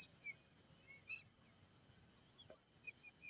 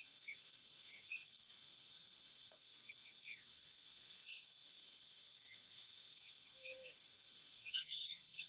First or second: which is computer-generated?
second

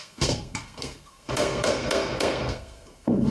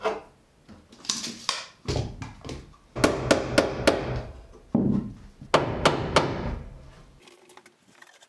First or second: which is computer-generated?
first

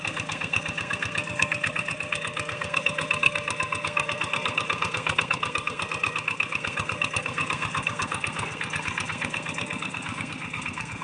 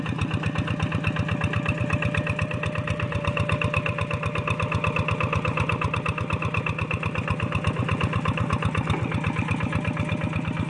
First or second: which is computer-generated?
first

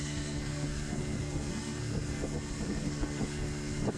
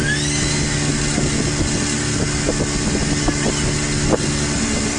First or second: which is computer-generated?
first